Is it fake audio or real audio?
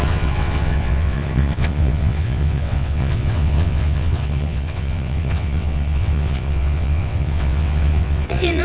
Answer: fake